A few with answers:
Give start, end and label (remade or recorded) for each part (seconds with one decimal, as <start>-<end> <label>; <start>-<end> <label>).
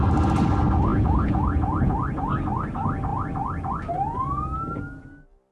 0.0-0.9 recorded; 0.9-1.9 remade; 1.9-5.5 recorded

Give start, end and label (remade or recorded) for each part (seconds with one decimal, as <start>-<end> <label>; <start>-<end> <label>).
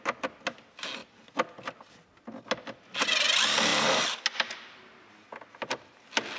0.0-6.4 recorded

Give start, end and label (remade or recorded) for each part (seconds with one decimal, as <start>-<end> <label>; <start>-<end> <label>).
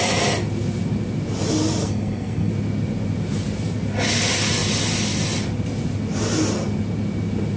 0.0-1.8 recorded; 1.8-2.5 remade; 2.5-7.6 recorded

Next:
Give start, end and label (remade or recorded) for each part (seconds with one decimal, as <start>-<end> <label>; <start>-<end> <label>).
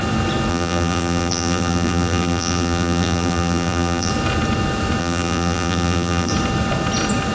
0.0-0.5 recorded; 0.5-4.1 remade; 4.1-5.0 recorded; 5.0-6.3 remade; 6.3-7.3 recorded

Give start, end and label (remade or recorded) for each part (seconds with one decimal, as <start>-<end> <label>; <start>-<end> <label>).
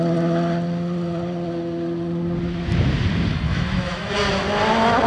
0.0-3.3 recorded; 3.3-4.1 remade; 4.1-5.1 recorded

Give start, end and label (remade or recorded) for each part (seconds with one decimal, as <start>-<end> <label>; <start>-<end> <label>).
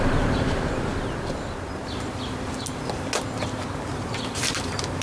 0.0-0.9 remade; 0.9-3.9 recorded; 3.9-5.0 remade